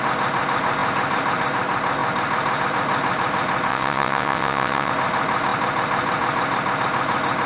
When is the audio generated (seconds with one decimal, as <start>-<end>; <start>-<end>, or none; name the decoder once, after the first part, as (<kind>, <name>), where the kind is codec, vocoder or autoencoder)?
3.7-4.9 (vocoder, WaveNeXt)